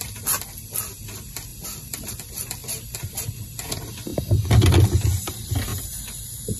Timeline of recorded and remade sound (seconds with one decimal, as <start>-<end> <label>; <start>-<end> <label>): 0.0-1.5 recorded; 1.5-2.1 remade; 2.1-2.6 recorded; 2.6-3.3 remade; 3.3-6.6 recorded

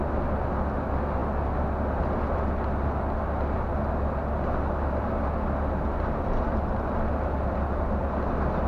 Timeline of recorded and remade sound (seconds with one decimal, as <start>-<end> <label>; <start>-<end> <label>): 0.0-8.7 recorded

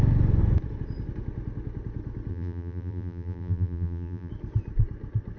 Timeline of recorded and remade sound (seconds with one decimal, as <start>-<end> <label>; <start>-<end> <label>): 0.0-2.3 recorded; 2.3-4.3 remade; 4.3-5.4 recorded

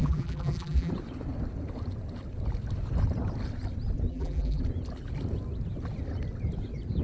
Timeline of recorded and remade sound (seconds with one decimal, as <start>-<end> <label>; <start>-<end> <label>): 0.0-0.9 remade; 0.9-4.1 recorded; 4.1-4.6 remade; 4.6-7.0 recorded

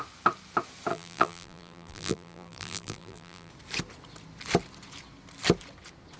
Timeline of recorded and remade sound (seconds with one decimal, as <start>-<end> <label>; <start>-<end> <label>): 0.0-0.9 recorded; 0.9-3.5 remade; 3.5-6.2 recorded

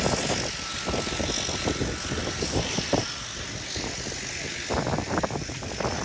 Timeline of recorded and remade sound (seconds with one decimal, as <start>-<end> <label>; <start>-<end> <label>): 0.0-2.2 recorded; 2.2-3.0 remade; 3.0-6.0 recorded

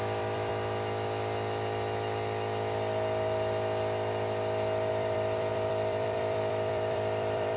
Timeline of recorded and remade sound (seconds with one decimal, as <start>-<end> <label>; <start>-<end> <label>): 0.0-0.5 remade; 0.5-4.9 recorded; 4.9-7.6 remade

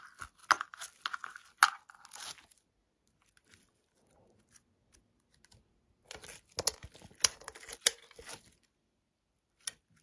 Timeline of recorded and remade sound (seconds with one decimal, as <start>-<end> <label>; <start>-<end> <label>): 0.0-10.0 recorded